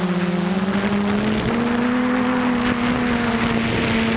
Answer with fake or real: real